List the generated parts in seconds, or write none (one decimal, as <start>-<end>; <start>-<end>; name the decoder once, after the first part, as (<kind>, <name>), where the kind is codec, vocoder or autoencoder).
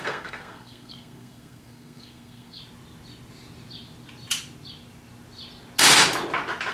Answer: 0.0-2.6 (codec, SNAC)